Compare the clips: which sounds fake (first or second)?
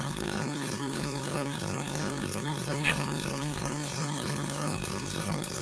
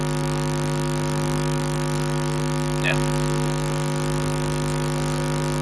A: first